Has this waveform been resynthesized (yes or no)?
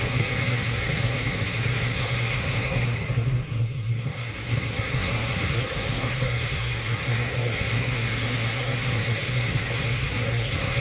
yes